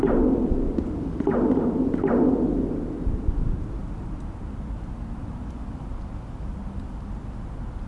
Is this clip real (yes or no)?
yes